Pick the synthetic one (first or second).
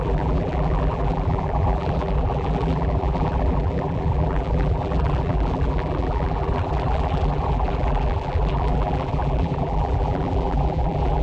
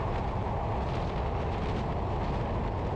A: first